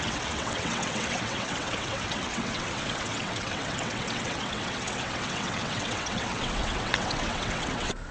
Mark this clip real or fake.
fake